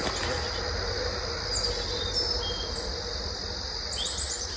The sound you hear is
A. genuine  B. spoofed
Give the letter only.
A